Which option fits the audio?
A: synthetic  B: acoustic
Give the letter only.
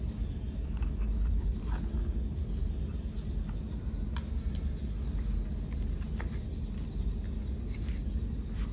B